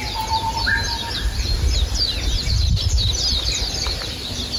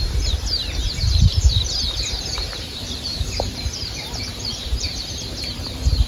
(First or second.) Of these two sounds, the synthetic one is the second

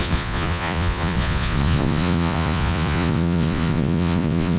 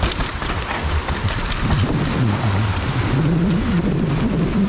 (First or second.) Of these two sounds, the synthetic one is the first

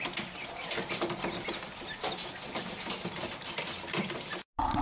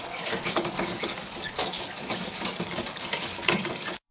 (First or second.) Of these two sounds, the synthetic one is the second